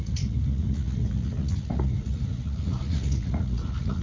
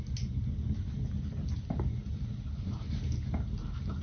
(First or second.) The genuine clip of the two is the second